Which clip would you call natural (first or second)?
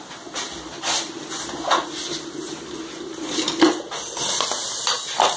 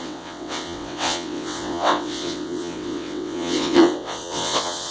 first